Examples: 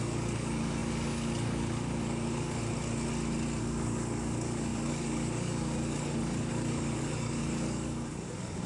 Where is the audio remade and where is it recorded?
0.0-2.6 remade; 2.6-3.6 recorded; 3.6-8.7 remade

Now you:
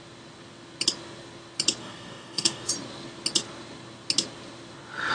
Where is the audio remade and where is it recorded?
0.0-1.8 recorded; 1.8-2.7 remade; 2.7-5.1 recorded

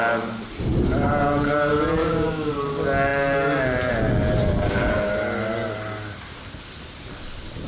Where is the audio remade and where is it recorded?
0.0-2.0 recorded; 2.0-2.5 remade; 2.5-7.7 recorded

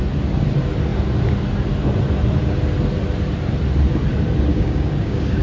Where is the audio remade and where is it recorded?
0.0-4.5 recorded; 4.5-5.4 remade

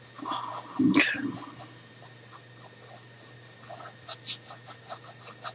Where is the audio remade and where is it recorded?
0.0-5.5 recorded

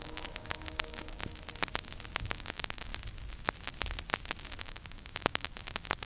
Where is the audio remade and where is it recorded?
0.0-1.2 remade; 1.2-2.1 recorded; 2.1-2.9 remade; 2.9-4.6 recorded; 4.6-6.1 remade

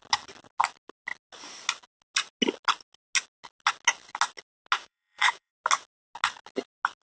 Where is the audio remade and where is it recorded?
0.0-4.8 recorded; 4.8-5.5 remade; 5.5-7.1 recorded

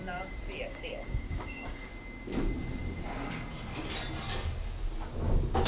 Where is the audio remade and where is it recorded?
0.0-0.7 recorded; 0.7-1.9 remade; 1.9-5.3 recorded; 5.3-5.7 remade